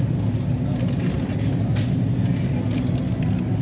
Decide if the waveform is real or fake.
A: real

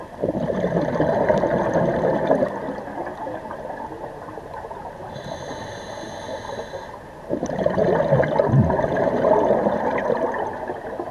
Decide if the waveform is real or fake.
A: real